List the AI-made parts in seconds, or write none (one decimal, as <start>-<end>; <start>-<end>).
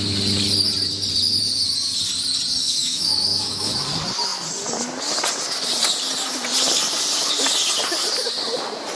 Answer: 2.6-3.7